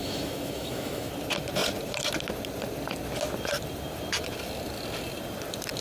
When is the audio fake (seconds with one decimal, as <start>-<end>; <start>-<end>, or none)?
0.0-1.1